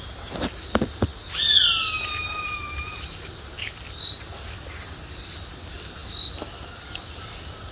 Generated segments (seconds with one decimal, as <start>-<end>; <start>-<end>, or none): none